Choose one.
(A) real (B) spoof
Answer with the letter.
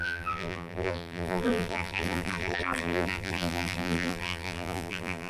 B